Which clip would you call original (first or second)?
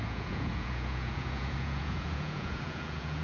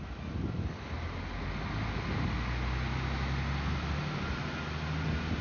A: second